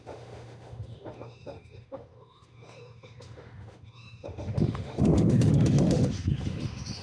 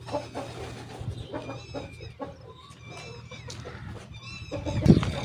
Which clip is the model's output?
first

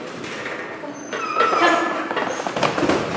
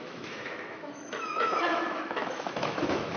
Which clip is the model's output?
second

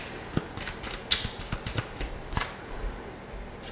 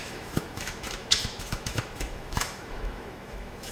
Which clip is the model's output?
second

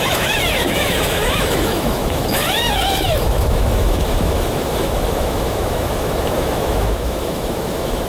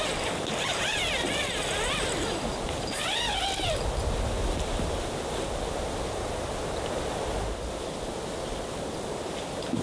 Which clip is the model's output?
first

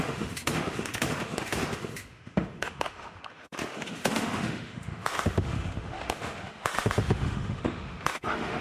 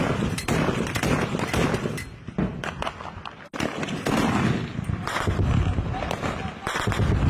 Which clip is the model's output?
first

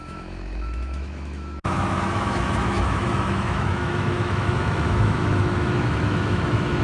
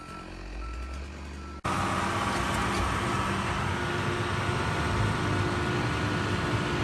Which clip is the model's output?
first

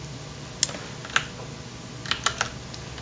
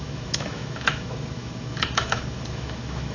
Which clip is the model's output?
second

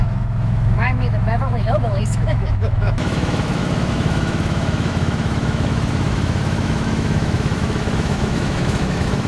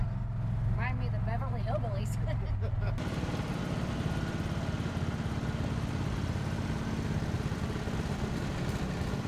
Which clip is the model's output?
first